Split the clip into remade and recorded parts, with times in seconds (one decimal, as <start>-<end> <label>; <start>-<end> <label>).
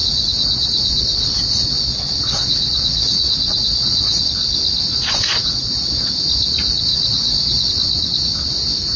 0.0-4.2 remade; 4.2-4.9 recorded; 4.9-6.1 remade; 6.1-6.9 recorded; 6.9-7.7 remade; 7.7-9.0 recorded